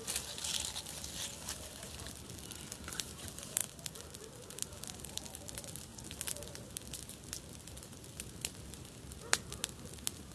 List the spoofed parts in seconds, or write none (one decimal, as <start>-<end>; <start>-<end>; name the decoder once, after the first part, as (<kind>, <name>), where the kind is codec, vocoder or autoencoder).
none